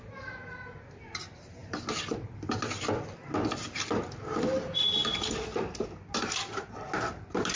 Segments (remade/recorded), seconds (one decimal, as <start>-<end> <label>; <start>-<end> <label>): 0.0-7.6 recorded